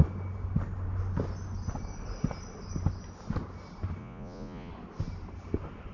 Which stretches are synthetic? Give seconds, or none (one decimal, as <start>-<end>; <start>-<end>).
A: 4.0-4.7